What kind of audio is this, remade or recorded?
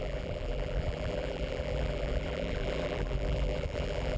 remade